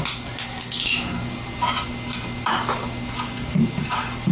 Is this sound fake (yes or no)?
no